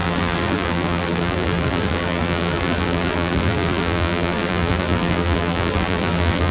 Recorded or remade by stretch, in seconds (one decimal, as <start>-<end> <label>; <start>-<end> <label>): 0.0-6.5 remade